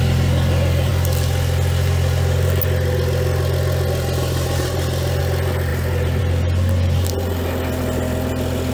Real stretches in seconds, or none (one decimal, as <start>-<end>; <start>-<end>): 0.0-8.7

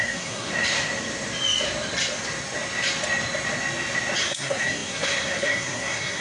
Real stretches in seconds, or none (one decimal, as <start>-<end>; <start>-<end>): 0.5-4.2

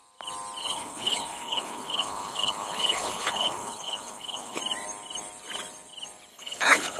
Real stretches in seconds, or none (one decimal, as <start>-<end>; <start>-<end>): 0.0-0.6; 4.6-6.3

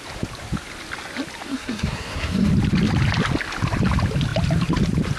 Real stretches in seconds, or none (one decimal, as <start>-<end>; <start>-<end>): 0.0-1.5; 2.5-5.2

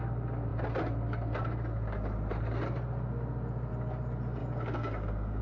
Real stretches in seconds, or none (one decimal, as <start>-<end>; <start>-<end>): 0.0-4.4

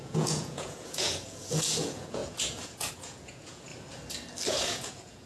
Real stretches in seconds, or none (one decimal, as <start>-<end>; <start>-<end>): 3.7-4.5

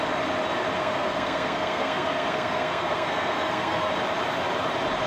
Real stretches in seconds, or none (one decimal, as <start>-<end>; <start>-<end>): 0.0-0.8; 3.9-5.1

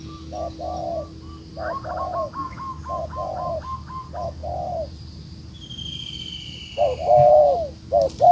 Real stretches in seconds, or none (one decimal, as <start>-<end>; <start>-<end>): 0.0-8.3